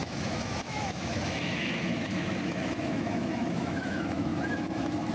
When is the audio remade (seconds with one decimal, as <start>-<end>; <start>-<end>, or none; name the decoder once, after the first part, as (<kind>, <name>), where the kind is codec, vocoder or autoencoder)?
0.0-5.1 (autoencoder, DAC-VAE)